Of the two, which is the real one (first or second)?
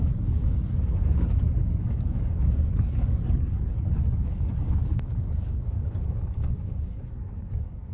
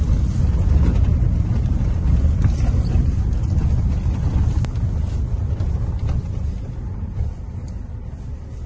second